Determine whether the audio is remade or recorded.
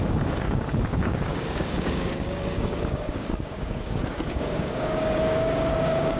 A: remade